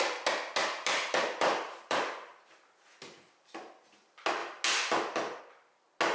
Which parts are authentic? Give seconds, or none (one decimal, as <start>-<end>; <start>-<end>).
0.0-0.6; 3.7-6.1